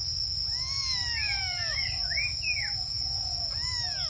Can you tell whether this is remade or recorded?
recorded